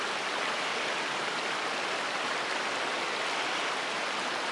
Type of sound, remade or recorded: remade